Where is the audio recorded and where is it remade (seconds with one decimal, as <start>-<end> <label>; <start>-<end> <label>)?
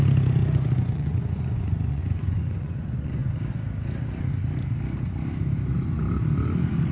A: 0.0-0.4 recorded; 0.4-3.3 remade; 3.3-6.9 recorded